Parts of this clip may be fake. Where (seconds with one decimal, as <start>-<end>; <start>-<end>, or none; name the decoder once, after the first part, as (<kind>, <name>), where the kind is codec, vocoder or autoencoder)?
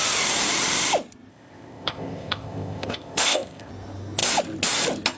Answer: 1.3-3.7 (codec, ZipCodec)